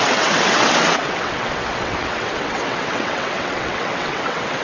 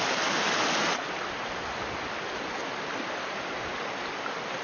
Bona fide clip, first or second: second